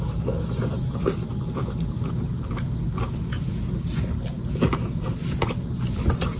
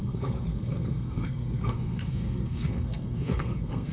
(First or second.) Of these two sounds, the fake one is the second